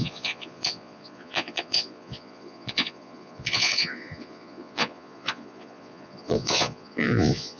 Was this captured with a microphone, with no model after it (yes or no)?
no